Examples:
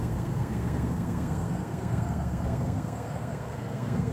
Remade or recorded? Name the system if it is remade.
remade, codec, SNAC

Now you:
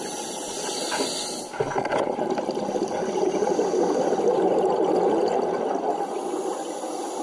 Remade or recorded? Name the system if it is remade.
recorded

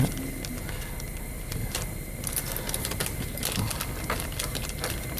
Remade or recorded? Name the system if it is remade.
recorded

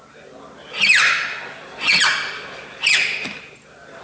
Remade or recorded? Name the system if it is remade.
recorded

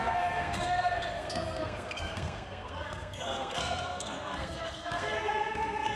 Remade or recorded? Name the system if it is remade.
remade, codec, SNAC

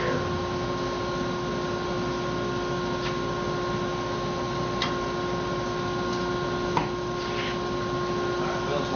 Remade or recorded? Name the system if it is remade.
recorded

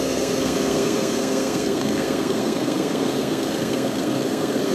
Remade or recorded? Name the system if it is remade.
remade, codec, SNAC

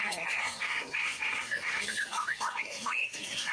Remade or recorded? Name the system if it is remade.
remade, codec, SNAC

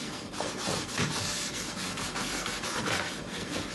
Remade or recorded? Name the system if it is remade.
remade, codec, SNAC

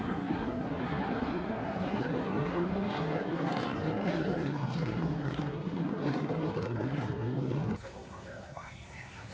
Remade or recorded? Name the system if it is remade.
remade, codec, SNAC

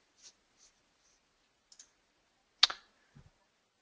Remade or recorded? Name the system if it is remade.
recorded